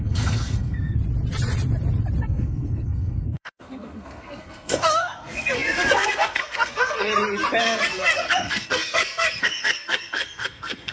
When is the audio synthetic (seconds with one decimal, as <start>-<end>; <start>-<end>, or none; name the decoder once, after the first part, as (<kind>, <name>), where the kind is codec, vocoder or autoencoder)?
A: 0.0-1.0 (codec, SNAC); 2.2-7.1; 7.6-10.9